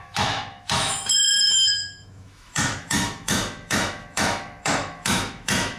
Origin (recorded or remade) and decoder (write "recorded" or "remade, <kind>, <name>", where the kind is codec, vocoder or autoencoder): remade, autoencoder, DAC-VAE